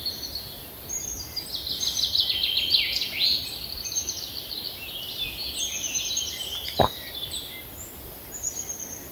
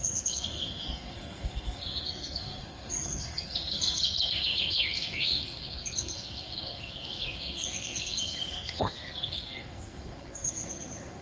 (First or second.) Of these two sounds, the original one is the first